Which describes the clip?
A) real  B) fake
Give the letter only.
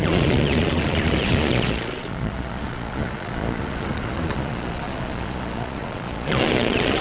B